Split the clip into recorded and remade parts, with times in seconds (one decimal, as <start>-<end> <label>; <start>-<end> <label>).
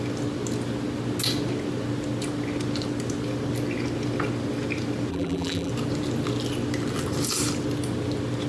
0.0-5.1 recorded; 5.1-5.7 remade; 5.7-8.5 recorded